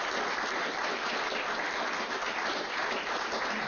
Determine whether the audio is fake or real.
real